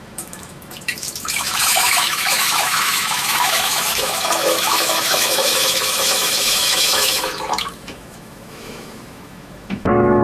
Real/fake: fake